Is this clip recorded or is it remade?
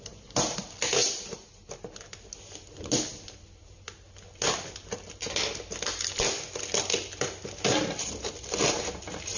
recorded